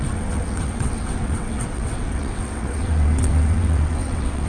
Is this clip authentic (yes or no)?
no